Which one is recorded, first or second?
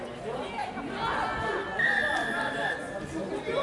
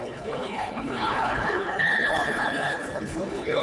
first